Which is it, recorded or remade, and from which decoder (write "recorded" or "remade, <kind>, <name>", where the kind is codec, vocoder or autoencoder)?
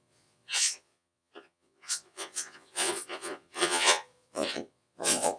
remade, vocoder, Vocos